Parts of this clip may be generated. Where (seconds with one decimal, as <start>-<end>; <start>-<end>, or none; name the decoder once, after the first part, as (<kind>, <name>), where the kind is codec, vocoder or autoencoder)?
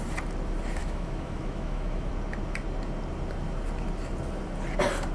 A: 0.8-2.1 (autoencoder, DAC-VAE)